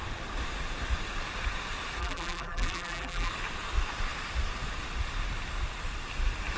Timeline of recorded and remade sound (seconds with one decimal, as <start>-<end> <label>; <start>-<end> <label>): 0.0-2.0 recorded; 2.0-3.3 remade; 3.3-6.6 recorded